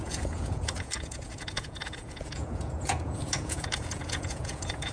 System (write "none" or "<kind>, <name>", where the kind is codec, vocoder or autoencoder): vocoder, Vocos